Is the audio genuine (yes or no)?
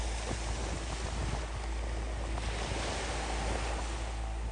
yes